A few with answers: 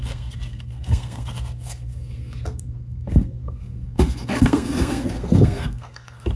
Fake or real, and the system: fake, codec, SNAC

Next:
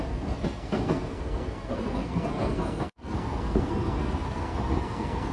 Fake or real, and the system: fake, codec, SNAC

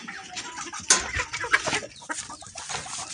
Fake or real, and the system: real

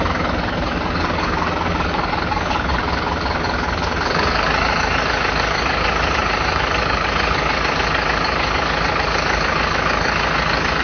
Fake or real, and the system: fake, codec, DAC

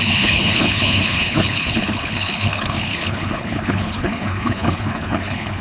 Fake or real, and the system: fake, codec, HILCodec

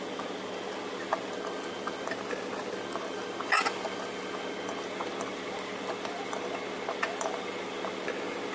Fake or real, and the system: real